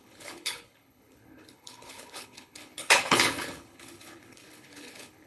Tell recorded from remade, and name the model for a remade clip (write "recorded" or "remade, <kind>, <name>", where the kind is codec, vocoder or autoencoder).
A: remade, codec, HILCodec